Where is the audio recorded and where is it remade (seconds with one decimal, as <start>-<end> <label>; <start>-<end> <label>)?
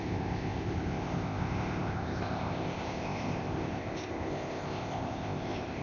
0.0-5.8 remade